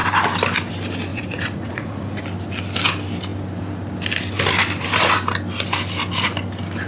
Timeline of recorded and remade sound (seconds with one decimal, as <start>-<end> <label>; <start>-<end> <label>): 0.0-1.1 recorded; 1.1-2.2 remade; 2.2-6.9 recorded